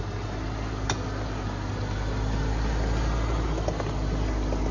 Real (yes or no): yes